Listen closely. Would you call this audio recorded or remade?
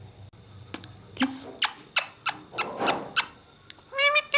recorded